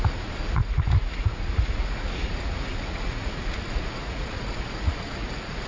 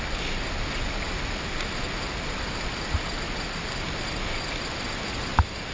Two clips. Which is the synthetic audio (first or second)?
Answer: first